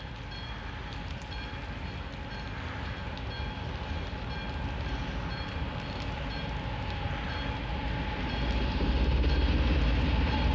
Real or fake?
real